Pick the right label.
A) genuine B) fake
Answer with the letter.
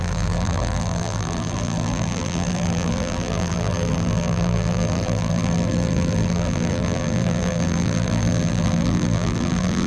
B